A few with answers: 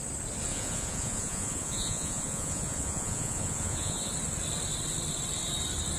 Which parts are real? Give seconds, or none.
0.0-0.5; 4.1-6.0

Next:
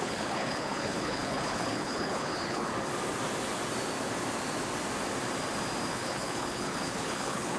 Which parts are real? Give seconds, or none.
2.7-5.9

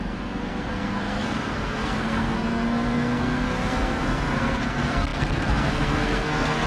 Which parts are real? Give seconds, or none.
none

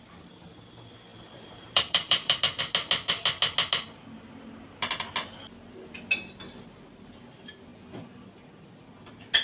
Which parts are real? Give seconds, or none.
0.0-1.1; 2.6-9.4

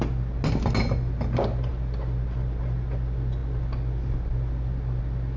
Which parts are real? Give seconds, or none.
0.0-5.4

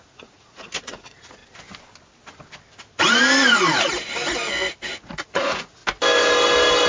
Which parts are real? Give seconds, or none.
1.4-5.0; 5.8-6.9